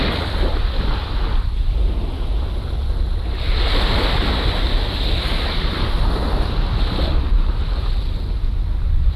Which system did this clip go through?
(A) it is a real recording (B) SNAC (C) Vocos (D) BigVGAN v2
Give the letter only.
A